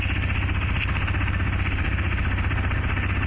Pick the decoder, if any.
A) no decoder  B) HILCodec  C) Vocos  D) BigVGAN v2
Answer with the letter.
A